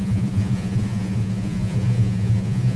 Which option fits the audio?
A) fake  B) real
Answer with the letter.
A